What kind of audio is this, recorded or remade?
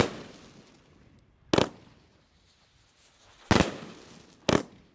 recorded